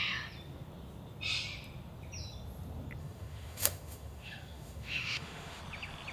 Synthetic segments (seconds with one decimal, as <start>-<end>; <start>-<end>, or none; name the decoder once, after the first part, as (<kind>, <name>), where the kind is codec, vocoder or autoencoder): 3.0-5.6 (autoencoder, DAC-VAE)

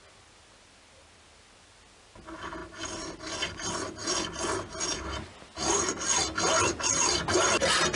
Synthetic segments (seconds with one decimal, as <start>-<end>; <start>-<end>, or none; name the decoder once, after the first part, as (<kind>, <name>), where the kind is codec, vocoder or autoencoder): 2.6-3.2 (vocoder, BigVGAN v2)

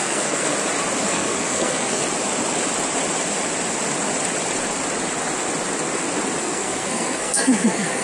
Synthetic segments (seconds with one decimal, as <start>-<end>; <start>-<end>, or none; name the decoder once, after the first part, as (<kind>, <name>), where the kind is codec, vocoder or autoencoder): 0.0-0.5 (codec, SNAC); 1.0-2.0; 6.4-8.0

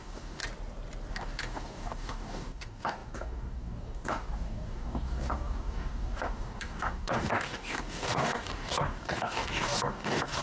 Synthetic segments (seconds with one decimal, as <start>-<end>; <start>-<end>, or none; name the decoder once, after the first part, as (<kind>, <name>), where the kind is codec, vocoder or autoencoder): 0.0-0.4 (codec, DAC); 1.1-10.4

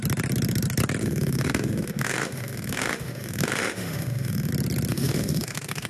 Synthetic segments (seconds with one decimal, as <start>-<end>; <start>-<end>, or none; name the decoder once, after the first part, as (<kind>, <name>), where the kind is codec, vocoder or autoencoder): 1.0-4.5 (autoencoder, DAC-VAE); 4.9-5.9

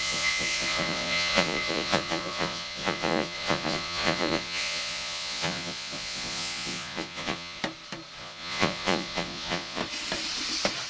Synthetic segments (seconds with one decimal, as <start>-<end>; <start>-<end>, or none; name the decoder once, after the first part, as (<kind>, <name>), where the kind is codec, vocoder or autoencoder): 0.0-7.6 (vocoder, Vocos); 8.2-9.8